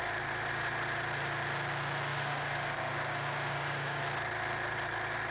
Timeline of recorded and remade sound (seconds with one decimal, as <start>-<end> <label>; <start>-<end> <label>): 0.0-2.1 recorded; 2.1-4.0 remade; 4.0-5.3 recorded